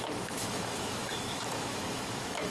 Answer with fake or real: fake